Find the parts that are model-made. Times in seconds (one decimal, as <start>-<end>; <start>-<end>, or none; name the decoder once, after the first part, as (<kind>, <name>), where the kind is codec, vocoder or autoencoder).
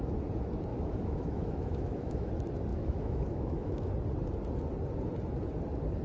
0.7-2.3 (autoencoder, DAC-VAE); 2.7-3.9